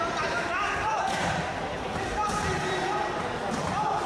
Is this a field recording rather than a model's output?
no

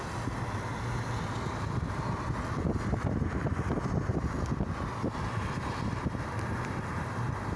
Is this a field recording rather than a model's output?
yes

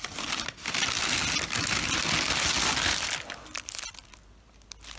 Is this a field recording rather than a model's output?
yes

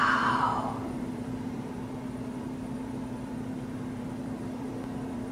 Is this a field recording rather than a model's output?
no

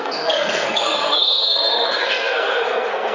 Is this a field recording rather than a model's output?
no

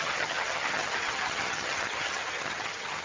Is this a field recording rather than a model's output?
no